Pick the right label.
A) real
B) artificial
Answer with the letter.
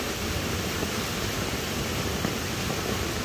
B